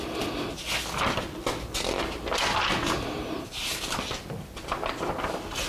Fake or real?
real